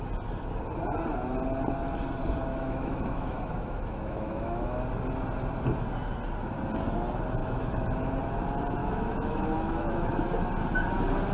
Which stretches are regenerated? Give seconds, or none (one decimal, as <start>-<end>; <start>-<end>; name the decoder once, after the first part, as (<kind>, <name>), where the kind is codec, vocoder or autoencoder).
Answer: 2.5-4.8 (autoencoder, DAC-VAE); 7.4-8.1; 8.8-10.5